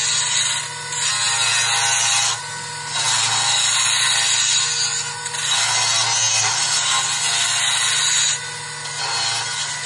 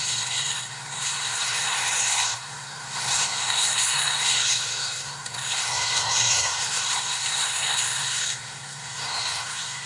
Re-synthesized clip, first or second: second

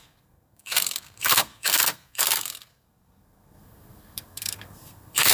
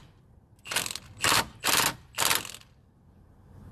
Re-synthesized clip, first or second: first